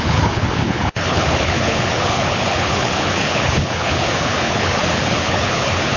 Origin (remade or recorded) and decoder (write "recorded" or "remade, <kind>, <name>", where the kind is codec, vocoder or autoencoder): remade, codec, HILCodec